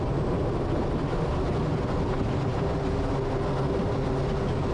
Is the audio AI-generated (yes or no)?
no